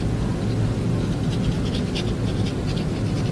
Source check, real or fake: real